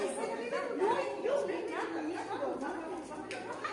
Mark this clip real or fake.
real